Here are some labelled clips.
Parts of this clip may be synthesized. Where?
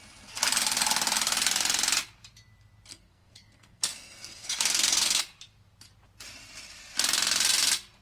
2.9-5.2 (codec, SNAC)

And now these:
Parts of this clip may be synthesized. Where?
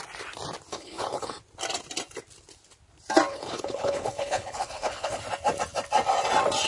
0.7-1.4 (codec, HILCodec); 3.3-5.2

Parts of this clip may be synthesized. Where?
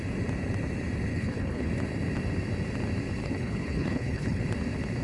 1.1-1.7 (codec, HILCodec); 3.2-4.4